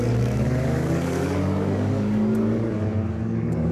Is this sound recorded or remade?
remade